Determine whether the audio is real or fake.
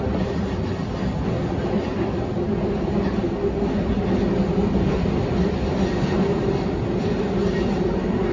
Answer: real